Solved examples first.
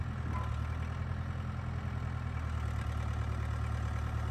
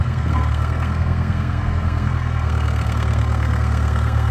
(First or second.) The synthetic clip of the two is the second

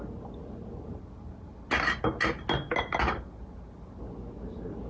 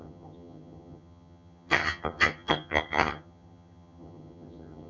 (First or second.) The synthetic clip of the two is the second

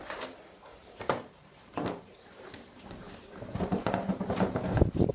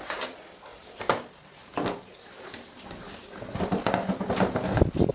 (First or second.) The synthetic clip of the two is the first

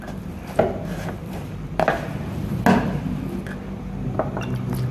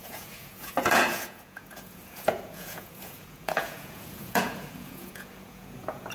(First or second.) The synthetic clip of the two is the second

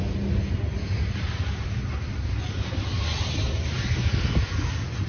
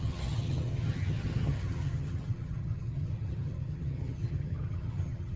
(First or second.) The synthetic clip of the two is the second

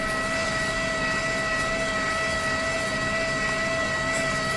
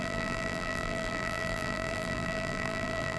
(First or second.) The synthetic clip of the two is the second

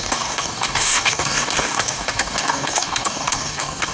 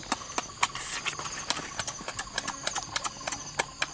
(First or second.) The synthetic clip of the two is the first